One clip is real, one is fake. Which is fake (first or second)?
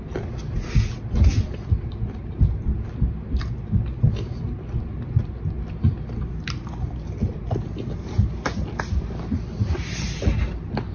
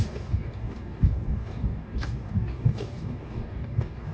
second